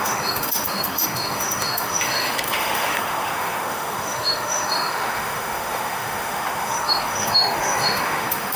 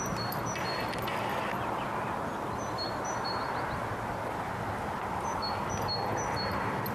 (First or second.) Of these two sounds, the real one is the second